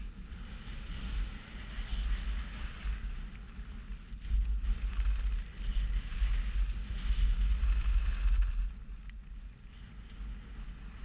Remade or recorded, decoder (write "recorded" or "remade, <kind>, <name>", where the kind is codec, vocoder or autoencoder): recorded